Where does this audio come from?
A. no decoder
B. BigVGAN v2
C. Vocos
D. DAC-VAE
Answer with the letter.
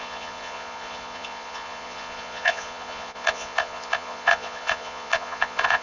C